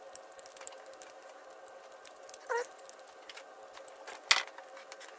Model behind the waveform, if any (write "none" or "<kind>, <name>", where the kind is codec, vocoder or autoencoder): none